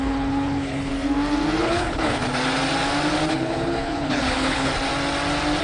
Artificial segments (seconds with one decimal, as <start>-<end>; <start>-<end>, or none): 0.0-0.9; 1.6-2.2; 3.3-4.7